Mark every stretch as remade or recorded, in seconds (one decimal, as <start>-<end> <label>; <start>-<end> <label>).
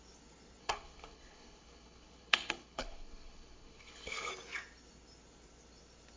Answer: 0.0-0.6 recorded; 0.6-4.3 remade; 4.3-6.2 recorded